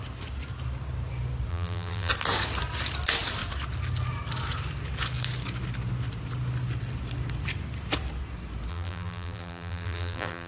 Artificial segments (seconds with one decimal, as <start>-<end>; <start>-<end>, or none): 1.5-2.1; 8.7-10.5